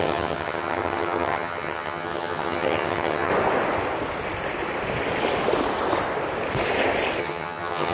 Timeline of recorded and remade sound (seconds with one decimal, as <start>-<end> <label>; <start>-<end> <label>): 0.0-3.3 remade; 3.3-7.2 recorded; 7.2-7.9 remade